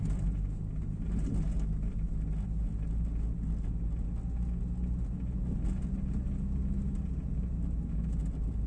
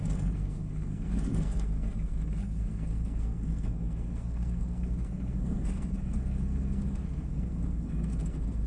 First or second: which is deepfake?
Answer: second